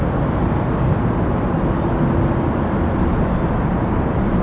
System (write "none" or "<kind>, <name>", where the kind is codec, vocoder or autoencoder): none